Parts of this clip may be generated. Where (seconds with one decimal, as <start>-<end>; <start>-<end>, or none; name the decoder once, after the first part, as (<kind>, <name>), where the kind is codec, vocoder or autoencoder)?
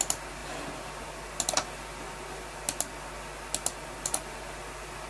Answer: none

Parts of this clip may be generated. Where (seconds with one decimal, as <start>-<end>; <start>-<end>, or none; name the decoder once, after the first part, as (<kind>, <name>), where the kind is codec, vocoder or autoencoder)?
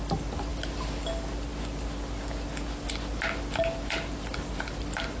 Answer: none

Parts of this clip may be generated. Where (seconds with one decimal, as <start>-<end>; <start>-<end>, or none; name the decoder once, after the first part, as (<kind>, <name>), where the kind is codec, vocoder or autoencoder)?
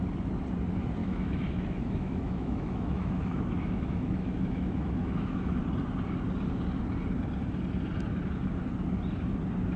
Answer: 1.0-5.6 (autoencoder, DAC-VAE)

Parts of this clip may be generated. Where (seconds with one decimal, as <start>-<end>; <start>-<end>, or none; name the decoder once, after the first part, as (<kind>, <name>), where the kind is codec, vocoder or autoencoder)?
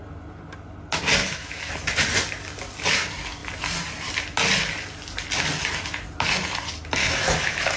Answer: 1.2-1.7 (autoencoder, DAC-VAE); 7.0-7.8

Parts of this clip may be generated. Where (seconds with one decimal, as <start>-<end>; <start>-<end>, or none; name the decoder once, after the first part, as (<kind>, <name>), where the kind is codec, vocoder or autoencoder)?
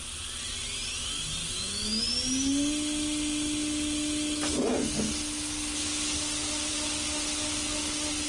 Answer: 1.4-2.0 (autoencoder, DAC-VAE)